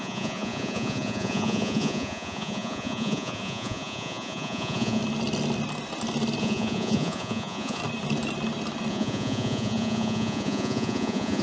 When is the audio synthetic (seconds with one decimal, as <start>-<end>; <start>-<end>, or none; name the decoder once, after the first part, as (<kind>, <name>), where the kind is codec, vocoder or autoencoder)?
0.0-5.0 (vocoder, Vocos); 6.4-7.8; 8.9-11.4